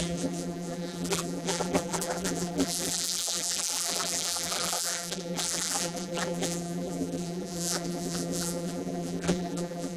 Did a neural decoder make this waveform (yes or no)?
yes